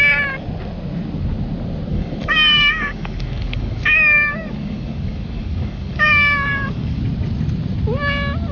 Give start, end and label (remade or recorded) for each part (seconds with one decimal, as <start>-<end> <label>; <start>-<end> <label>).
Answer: 0.0-1.9 recorded; 1.9-7.0 remade; 7.0-8.5 recorded